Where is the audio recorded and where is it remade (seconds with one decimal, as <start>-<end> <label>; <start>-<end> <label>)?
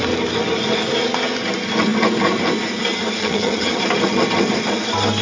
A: 0.0-3.2 recorded; 3.2-3.8 remade; 3.8-5.2 recorded